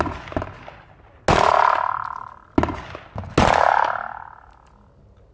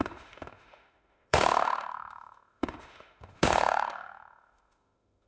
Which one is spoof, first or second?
second